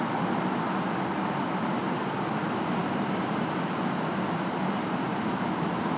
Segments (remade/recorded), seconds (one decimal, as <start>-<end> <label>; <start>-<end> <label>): 0.0-6.0 remade